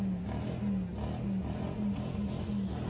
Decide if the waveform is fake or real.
real